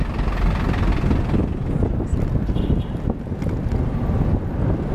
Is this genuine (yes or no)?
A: yes